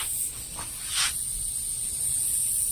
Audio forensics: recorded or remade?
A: recorded